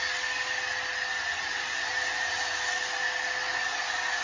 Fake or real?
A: real